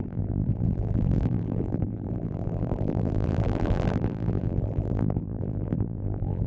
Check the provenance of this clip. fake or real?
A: fake